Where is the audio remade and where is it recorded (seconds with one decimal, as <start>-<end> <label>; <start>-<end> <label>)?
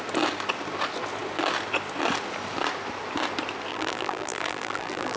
0.0-3.7 recorded; 3.7-5.2 remade